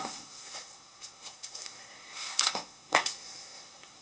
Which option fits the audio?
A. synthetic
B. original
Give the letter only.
A